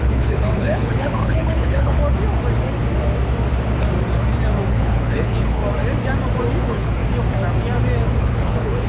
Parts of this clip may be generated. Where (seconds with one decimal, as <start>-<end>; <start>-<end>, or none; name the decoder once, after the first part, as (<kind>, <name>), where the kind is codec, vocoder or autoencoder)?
0.0-2.0 (codec, HILCodec); 4.7-5.6; 6.6-7.0; 8.2-8.9